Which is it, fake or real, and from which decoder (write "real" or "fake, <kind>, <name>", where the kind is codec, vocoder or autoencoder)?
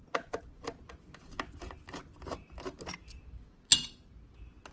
real